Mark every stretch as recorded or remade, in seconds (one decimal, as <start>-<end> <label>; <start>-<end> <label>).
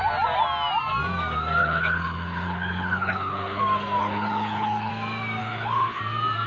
0.0-1.6 recorded; 1.6-3.6 remade; 3.6-4.0 recorded; 4.0-4.9 remade; 4.9-5.4 recorded; 5.4-6.0 remade; 6.0-6.5 recorded